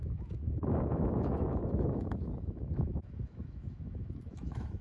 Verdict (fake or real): fake